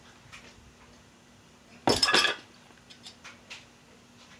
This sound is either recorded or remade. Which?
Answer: recorded